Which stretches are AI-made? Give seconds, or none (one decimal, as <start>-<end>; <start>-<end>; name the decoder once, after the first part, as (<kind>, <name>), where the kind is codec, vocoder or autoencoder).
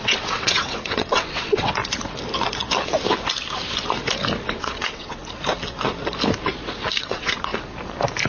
0.0-1.8 (vocoder, WaveNeXt); 4.5-5.2; 7.0-7.5